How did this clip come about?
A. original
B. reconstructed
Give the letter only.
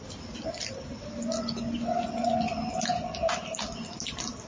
A